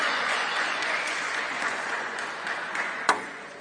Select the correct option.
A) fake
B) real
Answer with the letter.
A